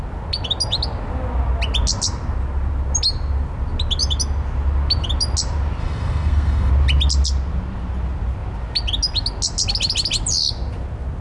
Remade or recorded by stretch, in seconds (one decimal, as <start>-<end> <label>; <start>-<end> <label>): 0.0-5.8 recorded; 5.8-6.7 remade; 6.7-11.2 recorded